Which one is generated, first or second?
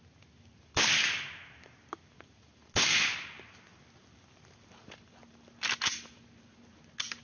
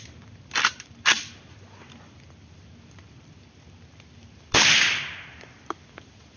second